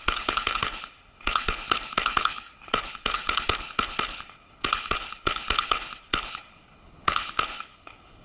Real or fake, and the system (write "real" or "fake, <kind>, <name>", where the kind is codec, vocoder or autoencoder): fake, codec, HILCodec